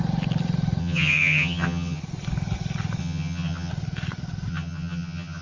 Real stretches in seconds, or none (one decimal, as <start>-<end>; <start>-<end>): 0.0-0.8; 2.0-3.0; 3.7-4.5